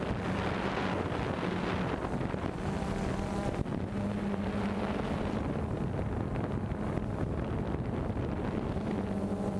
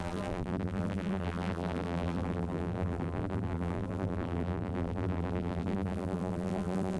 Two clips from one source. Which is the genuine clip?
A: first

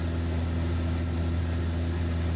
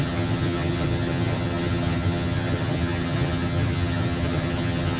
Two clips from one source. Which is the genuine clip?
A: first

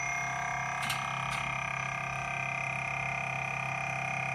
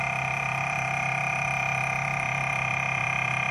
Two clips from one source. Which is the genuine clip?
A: first